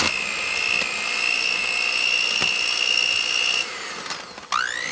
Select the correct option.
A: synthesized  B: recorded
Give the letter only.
B